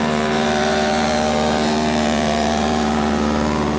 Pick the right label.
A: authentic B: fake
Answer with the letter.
B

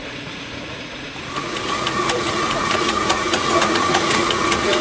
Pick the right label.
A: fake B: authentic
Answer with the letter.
A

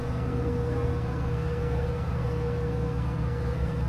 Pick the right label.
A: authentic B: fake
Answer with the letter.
B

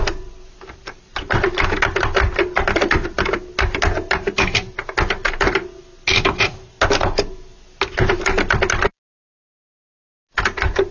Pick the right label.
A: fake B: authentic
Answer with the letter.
B